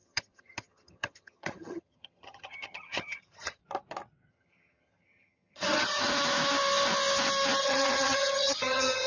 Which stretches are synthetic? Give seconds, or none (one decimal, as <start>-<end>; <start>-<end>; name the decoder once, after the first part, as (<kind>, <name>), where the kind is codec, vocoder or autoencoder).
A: 0.0-3.6 (vocoder, HiFi-GAN); 4.3-5.9; 7.6-9.1